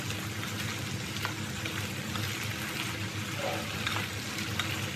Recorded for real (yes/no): yes